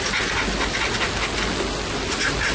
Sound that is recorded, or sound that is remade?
recorded